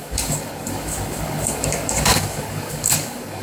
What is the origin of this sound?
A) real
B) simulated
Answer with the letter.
B